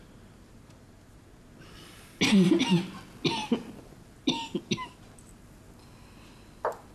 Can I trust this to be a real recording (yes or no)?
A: yes